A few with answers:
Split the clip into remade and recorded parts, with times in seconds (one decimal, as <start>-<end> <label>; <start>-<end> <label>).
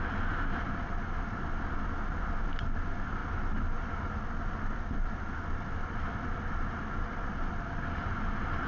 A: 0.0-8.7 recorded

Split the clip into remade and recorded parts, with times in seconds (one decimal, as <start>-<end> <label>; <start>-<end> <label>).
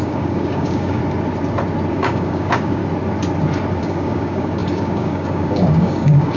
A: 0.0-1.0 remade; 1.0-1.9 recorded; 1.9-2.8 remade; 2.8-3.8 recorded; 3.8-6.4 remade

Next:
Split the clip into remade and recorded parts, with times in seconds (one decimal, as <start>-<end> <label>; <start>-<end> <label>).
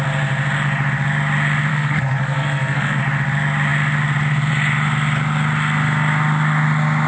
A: 0.0-1.7 recorded; 1.7-3.0 remade; 3.0-7.1 recorded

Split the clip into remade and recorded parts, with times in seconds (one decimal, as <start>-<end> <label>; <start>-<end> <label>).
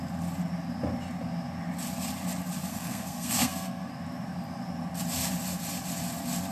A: 0.0-2.7 recorded; 2.7-3.9 remade; 3.9-6.5 recorded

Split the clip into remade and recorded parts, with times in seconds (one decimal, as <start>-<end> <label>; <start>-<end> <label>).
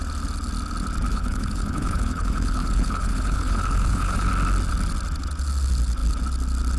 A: 0.0-1.1 recorded; 1.1-4.3 remade; 4.3-6.8 recorded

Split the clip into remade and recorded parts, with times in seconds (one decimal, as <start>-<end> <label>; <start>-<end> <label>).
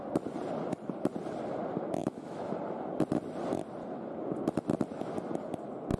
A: 0.0-2.0 recorded; 2.0-2.5 remade; 2.5-6.0 recorded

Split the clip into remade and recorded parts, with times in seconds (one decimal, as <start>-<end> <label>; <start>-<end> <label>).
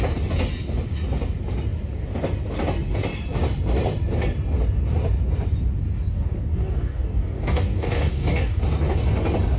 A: 0.0-6.1 recorded; 6.1-8.6 remade; 8.6-9.6 recorded